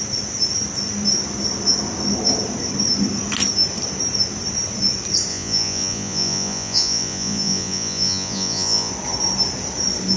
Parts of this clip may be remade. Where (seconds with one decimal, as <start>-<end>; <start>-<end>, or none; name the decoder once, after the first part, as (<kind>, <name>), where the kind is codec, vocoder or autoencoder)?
5.3-8.9 (vocoder, Vocos)